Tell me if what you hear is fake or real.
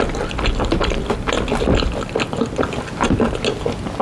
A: real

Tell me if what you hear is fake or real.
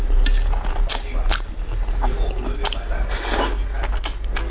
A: real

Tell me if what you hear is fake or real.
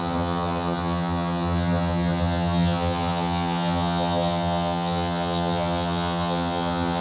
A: fake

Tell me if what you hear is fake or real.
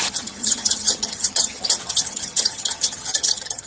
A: fake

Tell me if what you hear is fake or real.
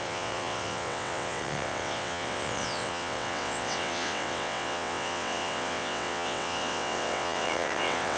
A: fake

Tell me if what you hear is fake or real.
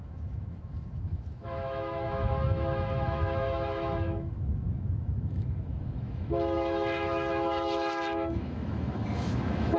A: fake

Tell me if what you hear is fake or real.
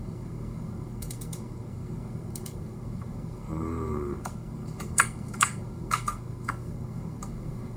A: fake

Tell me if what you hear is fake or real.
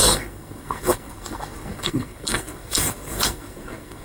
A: fake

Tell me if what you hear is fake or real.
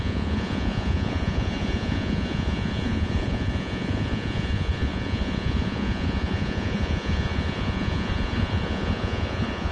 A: fake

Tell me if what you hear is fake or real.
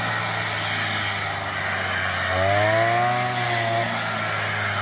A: real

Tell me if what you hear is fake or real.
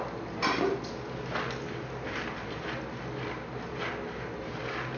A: real